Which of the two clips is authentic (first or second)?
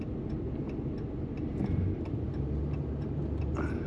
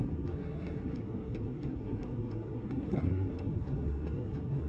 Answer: first